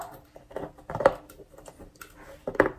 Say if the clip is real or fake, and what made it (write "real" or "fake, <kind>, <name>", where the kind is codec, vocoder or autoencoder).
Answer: real